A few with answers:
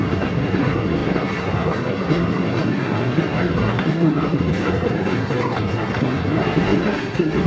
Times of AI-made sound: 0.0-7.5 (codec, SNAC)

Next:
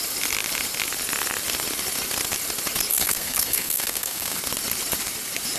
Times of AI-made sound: 2.9-4.4 (codec, SNAC)

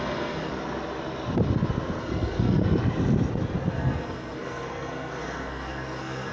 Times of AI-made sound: 0.0-0.5 (codec, SNAC); 2.0-2.6; 3.7-6.3

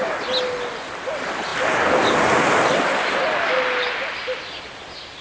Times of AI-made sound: none

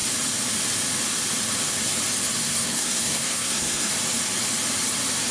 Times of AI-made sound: 2.4-3.9 (codec, SNAC)